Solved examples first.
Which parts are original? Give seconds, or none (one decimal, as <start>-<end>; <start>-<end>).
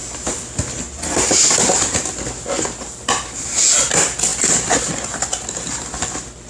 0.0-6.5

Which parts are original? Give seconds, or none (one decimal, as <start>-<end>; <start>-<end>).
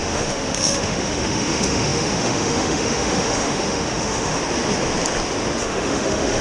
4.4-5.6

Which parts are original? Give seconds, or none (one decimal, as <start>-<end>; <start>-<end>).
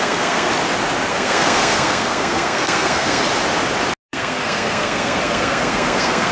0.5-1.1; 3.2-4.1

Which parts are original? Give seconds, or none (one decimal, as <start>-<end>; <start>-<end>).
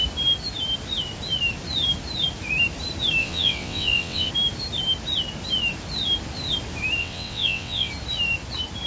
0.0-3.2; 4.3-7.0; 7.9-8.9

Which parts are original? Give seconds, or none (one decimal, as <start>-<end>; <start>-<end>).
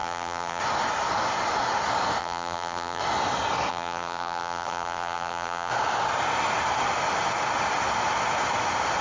0.6-2.2; 3.0-3.7; 5.7-9.0